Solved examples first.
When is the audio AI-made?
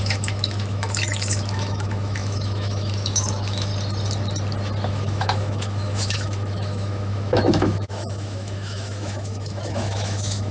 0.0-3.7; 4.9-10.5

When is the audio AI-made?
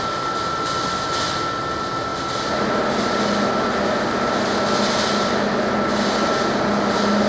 none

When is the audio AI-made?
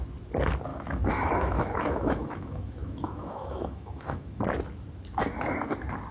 0.7-4.4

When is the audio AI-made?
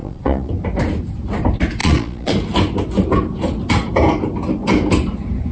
0.0-0.5; 1.8-2.3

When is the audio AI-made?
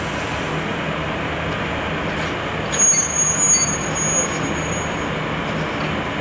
none